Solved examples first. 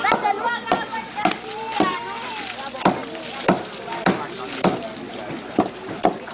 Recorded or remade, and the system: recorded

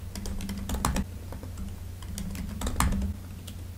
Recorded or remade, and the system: recorded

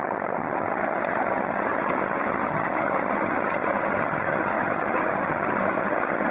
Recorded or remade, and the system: remade, vocoder, HiFi-GAN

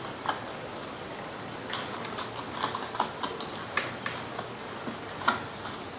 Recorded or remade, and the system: recorded